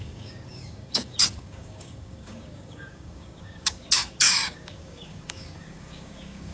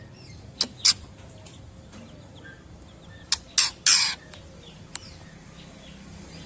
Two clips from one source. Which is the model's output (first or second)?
first